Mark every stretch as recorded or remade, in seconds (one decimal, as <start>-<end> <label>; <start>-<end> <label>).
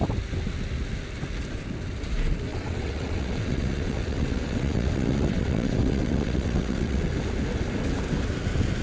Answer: 0.0-2.5 recorded; 2.5-7.1 remade; 7.1-8.8 recorded